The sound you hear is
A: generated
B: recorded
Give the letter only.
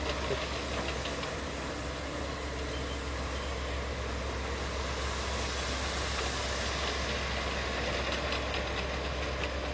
B